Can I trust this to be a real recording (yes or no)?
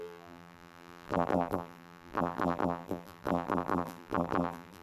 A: no